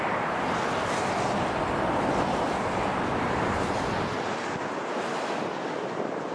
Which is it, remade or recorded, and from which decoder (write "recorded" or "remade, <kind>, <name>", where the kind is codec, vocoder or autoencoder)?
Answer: recorded